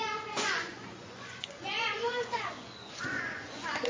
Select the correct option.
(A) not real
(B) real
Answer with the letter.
A